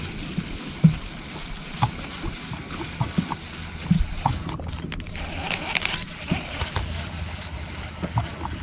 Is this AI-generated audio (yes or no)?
no